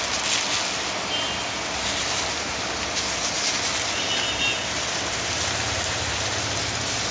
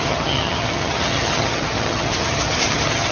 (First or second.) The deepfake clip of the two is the second